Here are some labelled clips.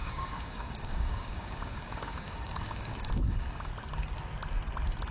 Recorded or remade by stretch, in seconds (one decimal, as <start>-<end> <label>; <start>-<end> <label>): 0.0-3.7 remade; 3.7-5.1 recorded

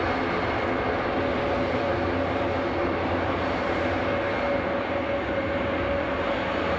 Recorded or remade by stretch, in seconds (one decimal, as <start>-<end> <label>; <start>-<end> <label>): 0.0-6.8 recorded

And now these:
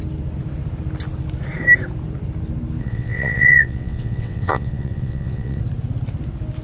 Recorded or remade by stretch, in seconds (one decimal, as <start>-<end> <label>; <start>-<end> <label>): 0.0-2.8 recorded; 2.8-5.6 remade; 5.6-6.6 recorded

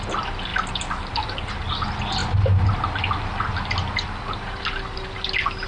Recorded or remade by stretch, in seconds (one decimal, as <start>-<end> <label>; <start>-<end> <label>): 0.0-5.7 recorded

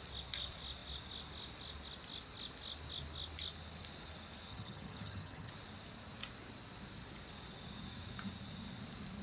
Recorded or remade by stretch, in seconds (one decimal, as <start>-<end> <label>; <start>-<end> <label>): 0.0-4.5 recorded; 4.5-5.5 remade; 5.5-9.2 recorded